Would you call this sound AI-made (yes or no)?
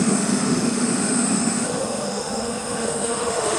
yes